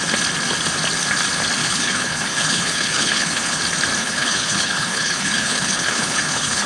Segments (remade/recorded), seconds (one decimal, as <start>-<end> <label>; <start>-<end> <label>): 0.0-1.6 recorded; 1.6-3.6 remade; 3.6-4.0 recorded; 4.0-6.7 remade